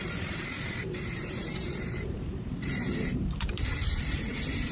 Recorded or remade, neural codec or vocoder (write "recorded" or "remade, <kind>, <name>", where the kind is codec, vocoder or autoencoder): remade, vocoder, BigVGAN v2